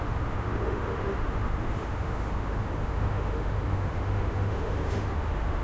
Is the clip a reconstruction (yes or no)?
yes